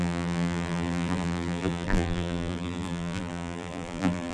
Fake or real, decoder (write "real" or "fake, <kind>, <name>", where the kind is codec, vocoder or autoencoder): fake, vocoder, BigVGAN v2